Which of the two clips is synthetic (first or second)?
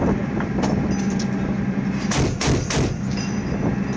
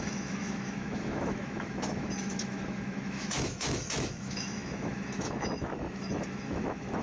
second